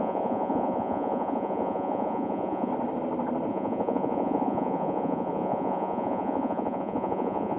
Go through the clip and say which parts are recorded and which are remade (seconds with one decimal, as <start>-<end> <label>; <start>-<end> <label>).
0.0-2.7 remade; 2.7-3.5 recorded; 3.5-7.6 remade